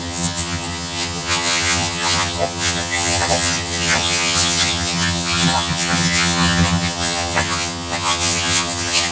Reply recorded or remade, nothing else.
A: remade